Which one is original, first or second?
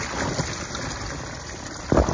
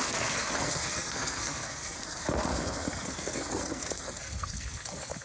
first